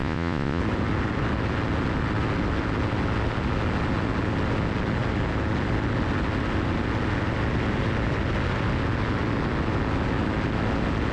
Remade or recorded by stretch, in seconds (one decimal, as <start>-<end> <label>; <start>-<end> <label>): 0.0-0.6 remade; 0.6-11.1 recorded